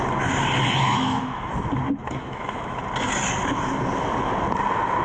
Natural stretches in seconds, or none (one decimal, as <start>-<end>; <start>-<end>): 0.0-0.8; 1.5-2.0; 2.8-5.0